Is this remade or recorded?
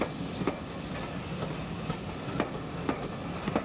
recorded